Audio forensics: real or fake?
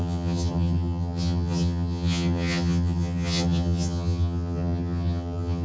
fake